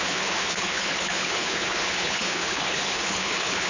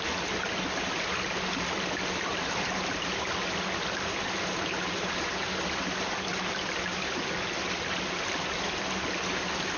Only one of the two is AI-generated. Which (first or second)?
first